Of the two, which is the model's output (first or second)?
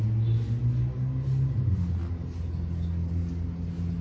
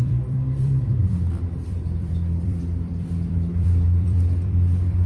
second